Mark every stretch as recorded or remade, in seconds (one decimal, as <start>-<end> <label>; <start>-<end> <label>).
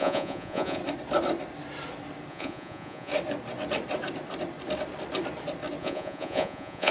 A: 0.0-0.8 remade; 0.8-2.3 recorded; 2.3-3.1 remade; 3.1-5.8 recorded; 5.8-6.9 remade